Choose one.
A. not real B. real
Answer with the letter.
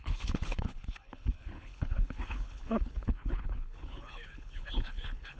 A